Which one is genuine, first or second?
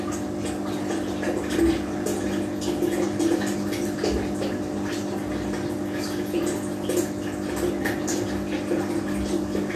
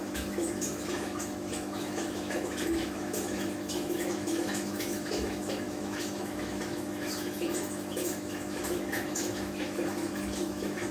first